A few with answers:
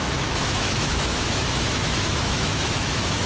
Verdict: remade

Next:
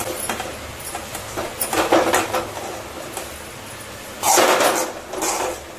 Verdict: recorded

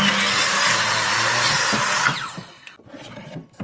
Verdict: recorded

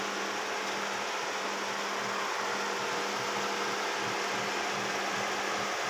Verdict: recorded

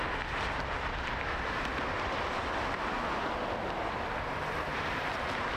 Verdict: recorded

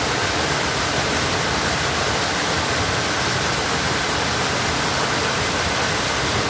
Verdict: recorded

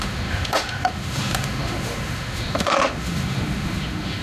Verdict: remade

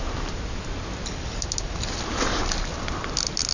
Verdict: recorded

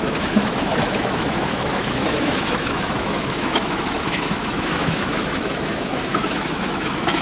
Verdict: remade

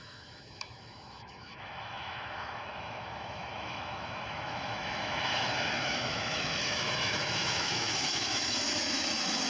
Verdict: remade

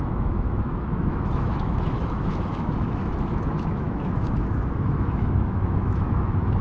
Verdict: remade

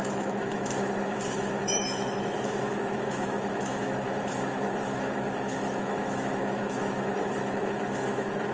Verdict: remade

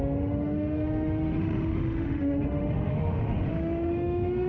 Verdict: remade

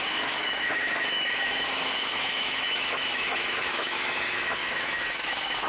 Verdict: remade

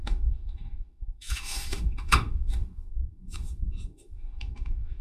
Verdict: remade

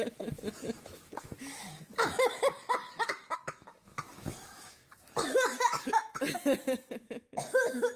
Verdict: remade